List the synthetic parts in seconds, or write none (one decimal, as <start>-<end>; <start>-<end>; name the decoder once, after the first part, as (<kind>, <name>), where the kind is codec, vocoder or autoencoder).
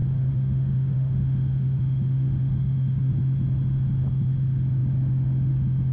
0.0-3.1 (autoencoder, DAC-VAE)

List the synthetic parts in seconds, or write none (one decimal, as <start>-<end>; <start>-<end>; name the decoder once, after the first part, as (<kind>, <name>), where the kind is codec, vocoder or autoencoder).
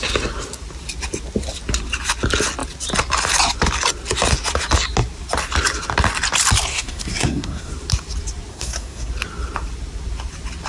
6.7-7.7 (codec, SNAC); 8.5-9.1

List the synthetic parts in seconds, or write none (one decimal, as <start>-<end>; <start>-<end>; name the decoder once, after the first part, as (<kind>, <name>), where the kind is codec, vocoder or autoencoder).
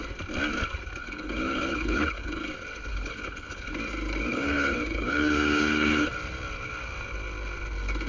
1.0-2.5 (codec, HILCodec); 2.9-3.7; 4.3-6.1